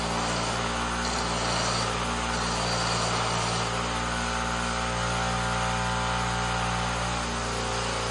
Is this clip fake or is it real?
real